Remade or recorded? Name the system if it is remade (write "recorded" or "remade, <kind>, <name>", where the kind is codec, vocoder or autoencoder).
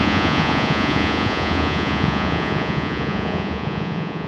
remade, vocoder, Vocos